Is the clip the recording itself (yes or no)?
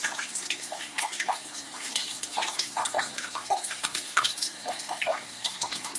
no